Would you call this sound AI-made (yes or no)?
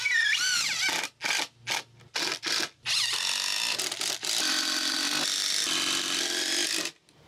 no